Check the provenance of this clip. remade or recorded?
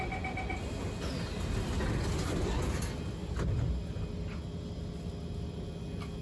recorded